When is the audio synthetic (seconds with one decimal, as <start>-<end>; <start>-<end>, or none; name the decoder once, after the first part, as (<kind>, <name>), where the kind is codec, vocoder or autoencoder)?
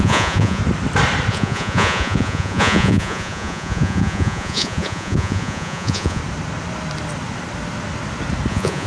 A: 0.0-0.6 (vocoder, Vocos); 1.3-6.2; 8.5-8.9